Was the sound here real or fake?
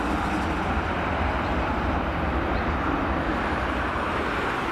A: real